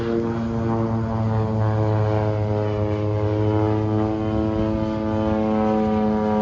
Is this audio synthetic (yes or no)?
no